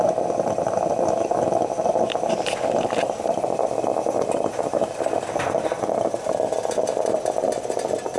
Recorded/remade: recorded